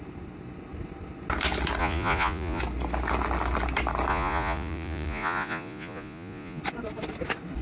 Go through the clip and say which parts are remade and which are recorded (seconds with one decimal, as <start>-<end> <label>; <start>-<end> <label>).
0.0-1.8 recorded; 1.8-2.6 remade; 2.6-4.1 recorded; 4.1-6.6 remade; 6.6-7.6 recorded